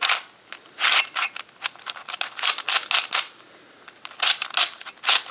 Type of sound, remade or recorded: recorded